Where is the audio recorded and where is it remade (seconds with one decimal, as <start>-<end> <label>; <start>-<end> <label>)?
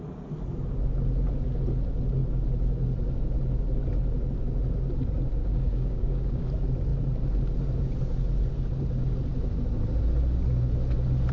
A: 0.0-5.4 recorded; 5.4-6.4 remade; 6.4-11.3 recorded